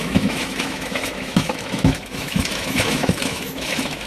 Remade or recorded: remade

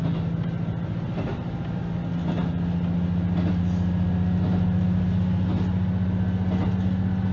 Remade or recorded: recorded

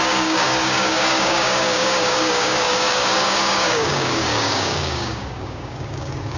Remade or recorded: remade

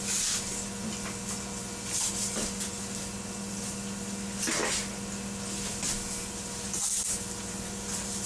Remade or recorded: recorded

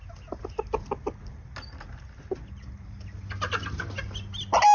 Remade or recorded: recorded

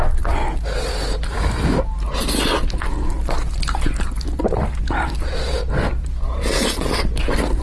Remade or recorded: recorded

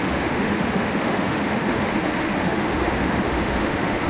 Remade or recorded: remade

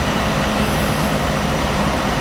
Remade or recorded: remade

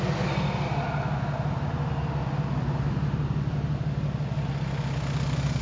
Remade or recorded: recorded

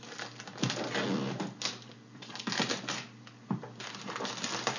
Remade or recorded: recorded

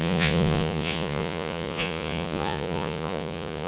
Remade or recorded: remade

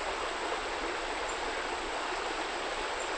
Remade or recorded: recorded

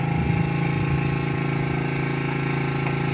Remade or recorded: recorded